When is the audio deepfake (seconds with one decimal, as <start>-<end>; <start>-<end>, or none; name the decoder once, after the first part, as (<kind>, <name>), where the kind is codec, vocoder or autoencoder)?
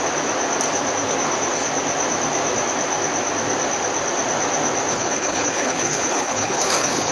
4.9-7.1 (codec, HILCodec)